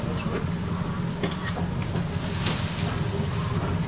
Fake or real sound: real